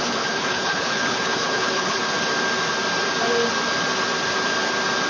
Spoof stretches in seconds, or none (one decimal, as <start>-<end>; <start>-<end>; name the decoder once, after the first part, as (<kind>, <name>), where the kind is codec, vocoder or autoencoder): 0.0-2.0 (codec, HILCodec)